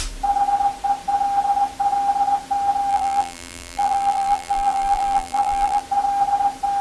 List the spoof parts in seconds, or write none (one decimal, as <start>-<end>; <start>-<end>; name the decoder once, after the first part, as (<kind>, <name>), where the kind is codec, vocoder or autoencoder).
2.9-5.8 (vocoder, BigVGAN v2)